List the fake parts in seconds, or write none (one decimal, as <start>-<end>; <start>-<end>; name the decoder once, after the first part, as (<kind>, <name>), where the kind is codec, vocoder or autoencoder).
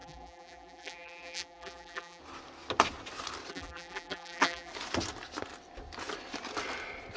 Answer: 0.0-2.2 (vocoder, BigVGAN v2); 3.5-4.7